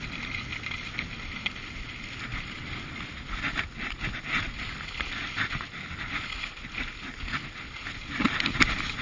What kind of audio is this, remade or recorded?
recorded